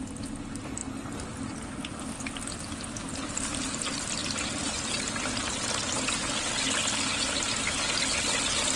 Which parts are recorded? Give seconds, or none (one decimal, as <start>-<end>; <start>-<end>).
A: 0.0-4.2; 6.3-7.1; 7.8-8.8